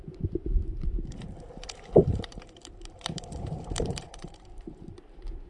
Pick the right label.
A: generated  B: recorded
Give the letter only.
A